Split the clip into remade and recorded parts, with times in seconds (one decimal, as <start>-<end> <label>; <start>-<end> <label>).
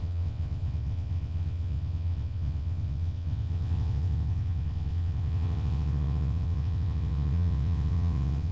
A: 0.0-8.5 remade